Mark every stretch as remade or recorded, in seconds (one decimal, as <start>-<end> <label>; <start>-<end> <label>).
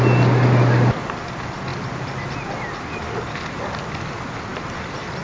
0.0-5.2 recorded